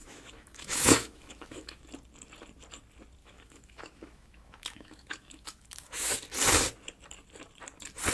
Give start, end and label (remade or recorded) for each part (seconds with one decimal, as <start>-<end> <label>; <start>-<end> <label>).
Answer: 0.0-1.8 remade; 1.8-3.2 recorded; 3.2-6.2 remade; 6.2-8.1 recorded